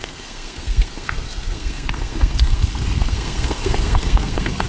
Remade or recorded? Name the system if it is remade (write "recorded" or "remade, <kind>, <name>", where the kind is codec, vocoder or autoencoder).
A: remade, codec, SNAC